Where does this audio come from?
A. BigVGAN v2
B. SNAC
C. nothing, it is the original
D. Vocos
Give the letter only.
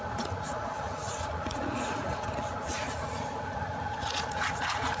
D